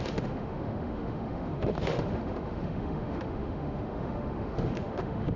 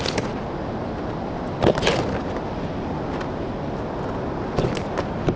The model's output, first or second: first